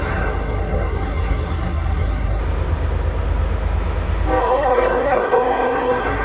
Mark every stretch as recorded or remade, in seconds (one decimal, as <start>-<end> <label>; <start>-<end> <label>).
0.0-2.4 remade; 2.4-4.4 recorded; 4.4-6.2 remade